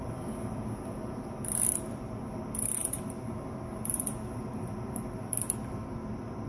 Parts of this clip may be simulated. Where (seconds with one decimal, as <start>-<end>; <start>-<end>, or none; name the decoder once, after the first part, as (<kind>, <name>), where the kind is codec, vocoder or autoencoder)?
none